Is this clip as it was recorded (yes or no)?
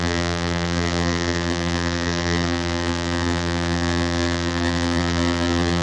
no